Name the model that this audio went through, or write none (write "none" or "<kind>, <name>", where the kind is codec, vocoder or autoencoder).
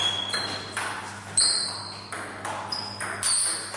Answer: none